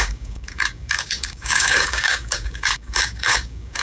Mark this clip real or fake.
fake